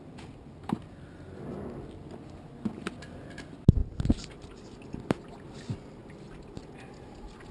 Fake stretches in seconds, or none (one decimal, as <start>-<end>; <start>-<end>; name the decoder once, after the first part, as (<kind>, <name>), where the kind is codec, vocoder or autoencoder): none